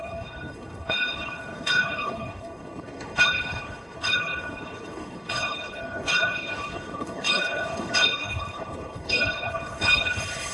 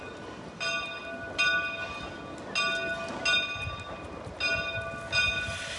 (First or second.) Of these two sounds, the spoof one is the first